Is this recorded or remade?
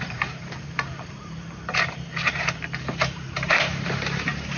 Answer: remade